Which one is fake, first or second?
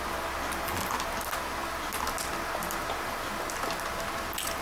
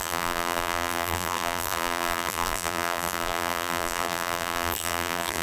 second